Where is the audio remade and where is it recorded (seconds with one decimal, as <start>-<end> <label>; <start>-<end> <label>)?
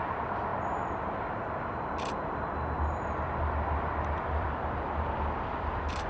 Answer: 0.0-0.5 remade; 0.5-1.9 recorded; 1.9-6.1 remade